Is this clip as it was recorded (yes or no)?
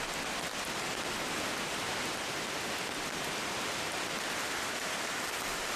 yes